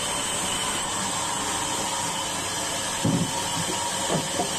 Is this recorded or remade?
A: recorded